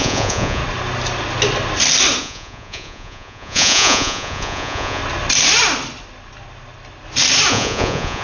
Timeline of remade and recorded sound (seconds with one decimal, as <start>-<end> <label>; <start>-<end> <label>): 0.0-0.6 remade; 0.6-2.2 recorded; 2.2-5.0 remade; 5.0-7.5 recorded; 7.5-8.2 remade